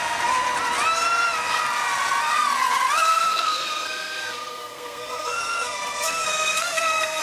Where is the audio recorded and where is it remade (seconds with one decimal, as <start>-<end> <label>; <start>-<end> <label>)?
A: 0.0-3.1 recorded; 3.1-7.2 remade